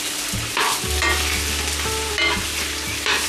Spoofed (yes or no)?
no